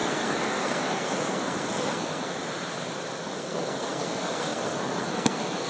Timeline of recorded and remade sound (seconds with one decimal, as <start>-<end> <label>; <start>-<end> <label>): 0.0-2.4 remade; 2.4-3.2 recorded; 3.2-5.7 remade